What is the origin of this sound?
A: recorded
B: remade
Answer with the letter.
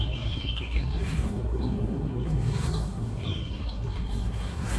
B